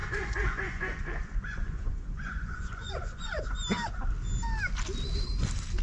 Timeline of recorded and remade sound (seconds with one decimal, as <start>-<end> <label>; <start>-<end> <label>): 0.0-3.4 remade; 3.4-5.8 recorded